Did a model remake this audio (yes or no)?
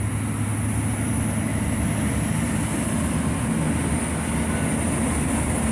no